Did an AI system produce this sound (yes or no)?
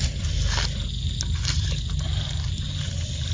no